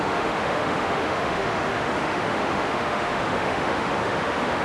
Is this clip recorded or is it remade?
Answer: remade